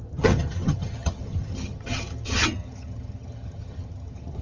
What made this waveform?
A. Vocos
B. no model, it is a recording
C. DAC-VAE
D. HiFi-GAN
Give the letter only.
D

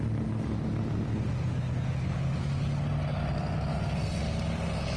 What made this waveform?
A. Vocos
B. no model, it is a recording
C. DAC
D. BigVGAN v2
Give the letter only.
B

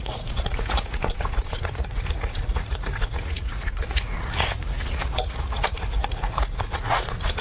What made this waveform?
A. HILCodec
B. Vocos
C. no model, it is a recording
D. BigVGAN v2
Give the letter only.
B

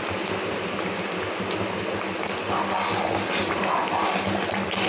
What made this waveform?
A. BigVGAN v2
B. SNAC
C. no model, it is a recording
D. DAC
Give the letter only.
C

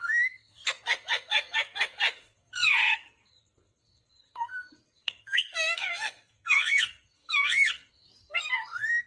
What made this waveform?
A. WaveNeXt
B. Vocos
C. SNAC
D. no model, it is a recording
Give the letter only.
C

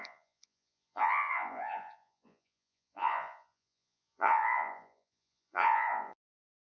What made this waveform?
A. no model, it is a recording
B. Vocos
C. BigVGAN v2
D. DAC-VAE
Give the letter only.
B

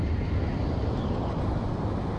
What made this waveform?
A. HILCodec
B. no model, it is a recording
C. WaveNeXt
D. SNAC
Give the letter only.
B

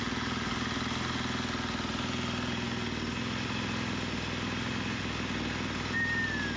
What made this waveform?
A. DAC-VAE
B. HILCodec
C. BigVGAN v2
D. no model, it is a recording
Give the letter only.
D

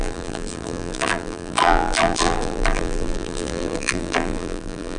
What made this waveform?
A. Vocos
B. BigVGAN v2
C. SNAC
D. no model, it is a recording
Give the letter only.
B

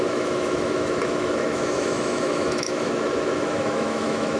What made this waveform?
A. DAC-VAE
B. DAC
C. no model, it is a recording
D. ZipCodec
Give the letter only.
A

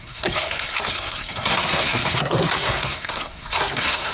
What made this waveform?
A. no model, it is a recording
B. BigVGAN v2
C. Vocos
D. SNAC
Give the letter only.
D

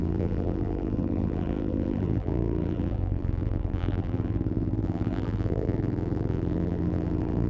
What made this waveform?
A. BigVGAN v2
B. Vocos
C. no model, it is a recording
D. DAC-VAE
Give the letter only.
A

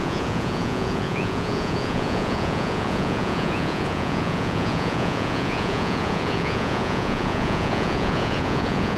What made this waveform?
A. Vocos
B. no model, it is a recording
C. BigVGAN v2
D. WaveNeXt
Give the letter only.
A